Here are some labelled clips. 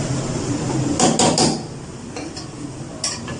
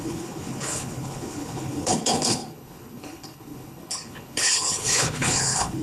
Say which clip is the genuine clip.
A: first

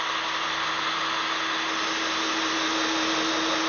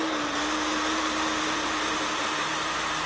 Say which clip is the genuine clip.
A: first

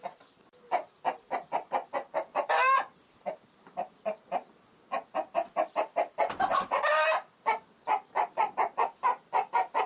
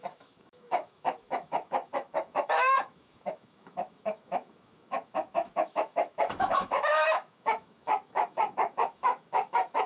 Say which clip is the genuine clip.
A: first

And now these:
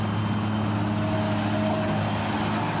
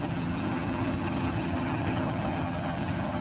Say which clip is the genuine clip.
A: first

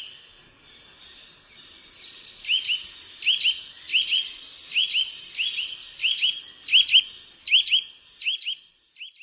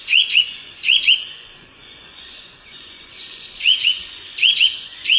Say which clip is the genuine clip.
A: first